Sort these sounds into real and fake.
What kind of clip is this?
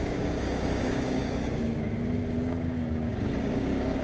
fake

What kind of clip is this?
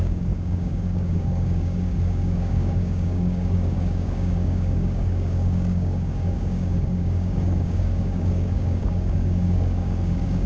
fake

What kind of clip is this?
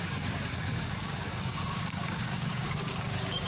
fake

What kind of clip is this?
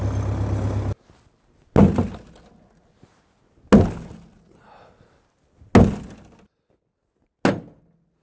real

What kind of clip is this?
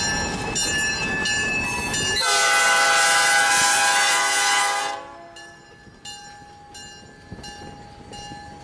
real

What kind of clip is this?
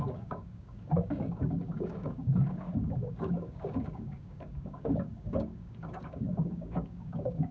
fake